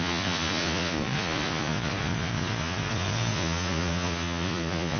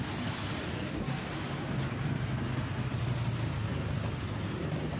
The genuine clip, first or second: second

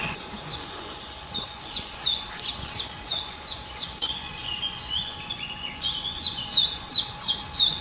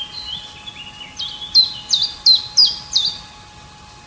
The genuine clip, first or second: second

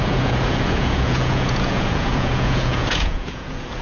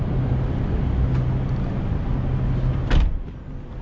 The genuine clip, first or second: second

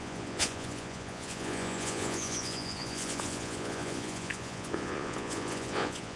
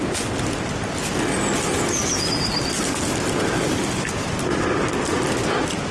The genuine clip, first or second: second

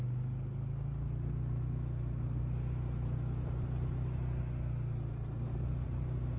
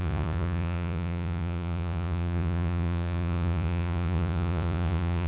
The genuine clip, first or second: first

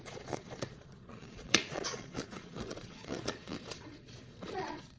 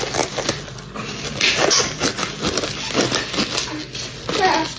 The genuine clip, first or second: second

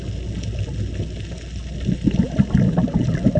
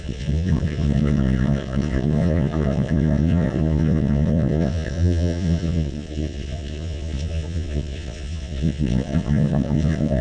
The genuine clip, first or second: first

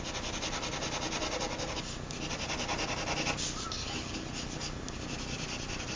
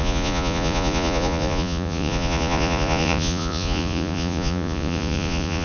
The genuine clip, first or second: first